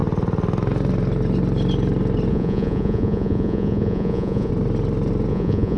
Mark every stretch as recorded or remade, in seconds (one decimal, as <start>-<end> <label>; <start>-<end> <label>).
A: 0.0-2.3 recorded; 2.3-4.5 remade; 4.5-5.3 recorded; 5.3-5.8 remade